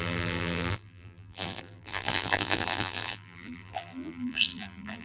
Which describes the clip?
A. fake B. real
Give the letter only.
A